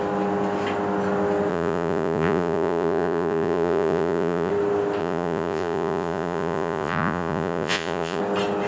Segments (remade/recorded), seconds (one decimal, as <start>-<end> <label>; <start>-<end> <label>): 0.0-1.5 recorded; 1.5-4.5 remade; 4.5-5.0 recorded; 5.0-8.2 remade; 8.2-8.7 recorded